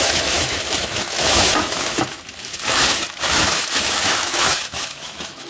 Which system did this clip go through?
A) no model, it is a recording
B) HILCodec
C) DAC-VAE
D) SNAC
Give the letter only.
C